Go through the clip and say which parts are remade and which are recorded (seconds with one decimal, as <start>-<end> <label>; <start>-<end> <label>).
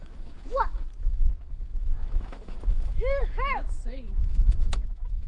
0.0-5.3 remade